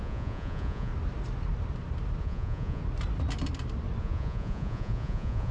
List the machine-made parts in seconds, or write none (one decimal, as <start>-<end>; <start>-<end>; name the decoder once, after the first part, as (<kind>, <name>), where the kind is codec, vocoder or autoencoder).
0.0-0.9 (vocoder, Vocos); 2.2-2.8; 4.0-5.5